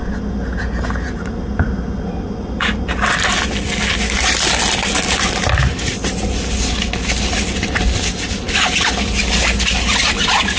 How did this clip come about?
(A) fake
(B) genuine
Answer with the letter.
B